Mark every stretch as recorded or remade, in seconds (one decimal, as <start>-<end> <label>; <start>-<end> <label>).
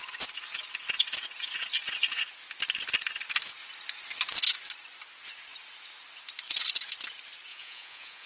0.0-7.5 recorded; 7.5-8.3 remade